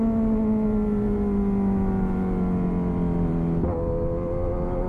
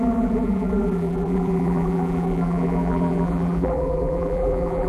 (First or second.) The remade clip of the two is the second